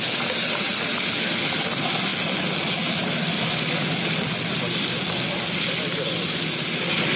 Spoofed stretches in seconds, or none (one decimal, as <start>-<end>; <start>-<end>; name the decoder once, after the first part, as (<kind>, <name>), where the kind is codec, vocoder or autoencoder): none